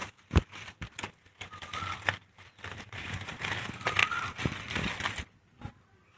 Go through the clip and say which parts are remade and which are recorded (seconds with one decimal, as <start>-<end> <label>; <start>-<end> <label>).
0.0-2.8 recorded; 2.8-4.0 remade; 4.0-5.7 recorded; 5.7-6.2 remade